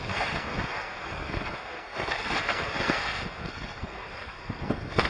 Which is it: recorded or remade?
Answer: remade